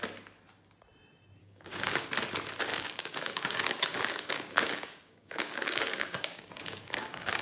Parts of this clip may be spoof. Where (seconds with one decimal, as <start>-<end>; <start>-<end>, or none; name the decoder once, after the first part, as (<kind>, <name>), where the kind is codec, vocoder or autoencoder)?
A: 1.4-2.1 (codec, DAC); 2.7-7.4